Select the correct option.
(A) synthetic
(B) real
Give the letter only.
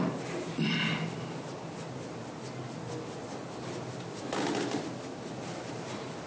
B